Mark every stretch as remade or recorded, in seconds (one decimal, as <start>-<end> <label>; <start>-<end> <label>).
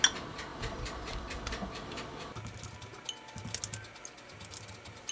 0.0-0.5 recorded; 0.5-2.3 remade; 2.3-5.1 recorded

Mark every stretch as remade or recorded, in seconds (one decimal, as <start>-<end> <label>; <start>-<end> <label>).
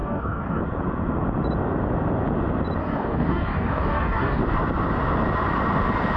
0.0-0.6 remade; 0.6-2.8 recorded; 2.8-4.4 remade; 4.4-6.2 recorded